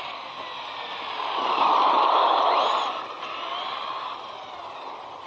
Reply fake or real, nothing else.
real